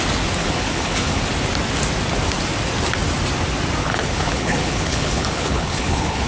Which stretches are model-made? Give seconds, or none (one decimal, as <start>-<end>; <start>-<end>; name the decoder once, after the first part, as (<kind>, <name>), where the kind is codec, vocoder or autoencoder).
0.4-1.2 (codec, HILCodec); 3.8-6.3